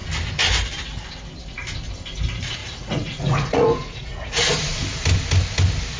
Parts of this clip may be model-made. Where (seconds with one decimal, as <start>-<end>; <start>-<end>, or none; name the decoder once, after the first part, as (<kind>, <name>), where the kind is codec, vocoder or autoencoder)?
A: 2.6-4.4 (vocoder, Vocos)